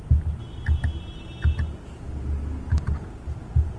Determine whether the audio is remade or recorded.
recorded